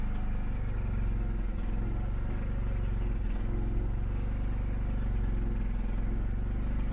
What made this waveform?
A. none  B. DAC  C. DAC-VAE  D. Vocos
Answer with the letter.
A